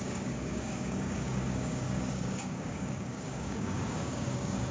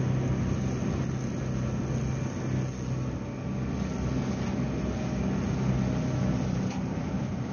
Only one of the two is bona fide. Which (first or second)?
second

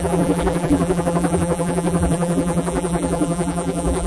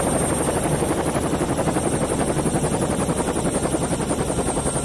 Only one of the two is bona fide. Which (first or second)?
second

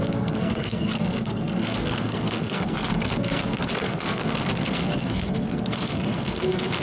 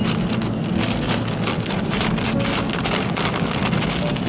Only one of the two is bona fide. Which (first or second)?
second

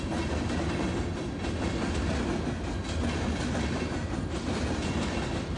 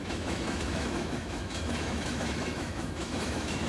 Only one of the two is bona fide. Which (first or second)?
first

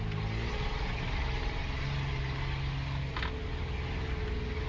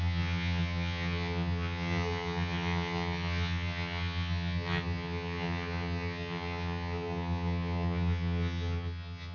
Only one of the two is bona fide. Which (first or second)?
first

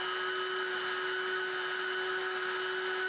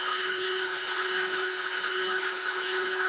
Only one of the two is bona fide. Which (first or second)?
first